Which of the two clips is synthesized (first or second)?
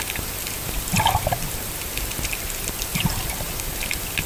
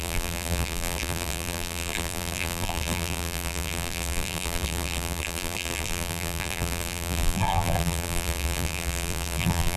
second